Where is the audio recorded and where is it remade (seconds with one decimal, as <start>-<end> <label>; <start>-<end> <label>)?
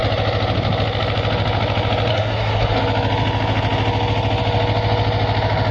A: 0.0-2.1 recorded; 2.1-2.8 remade; 2.8-5.7 recorded